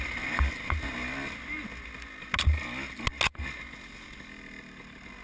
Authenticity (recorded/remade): recorded